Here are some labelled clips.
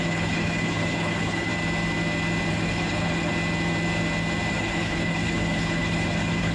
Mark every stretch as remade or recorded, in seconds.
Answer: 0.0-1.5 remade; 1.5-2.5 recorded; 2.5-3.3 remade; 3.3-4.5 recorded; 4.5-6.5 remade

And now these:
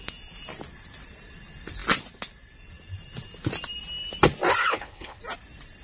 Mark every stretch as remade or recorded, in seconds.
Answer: 0.0-4.6 recorded; 4.6-5.2 remade; 5.2-5.8 recorded